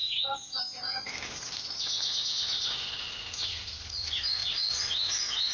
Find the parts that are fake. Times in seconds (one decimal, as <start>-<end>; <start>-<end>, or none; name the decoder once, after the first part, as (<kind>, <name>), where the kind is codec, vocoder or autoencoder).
4.4-4.9 (vocoder, Vocos)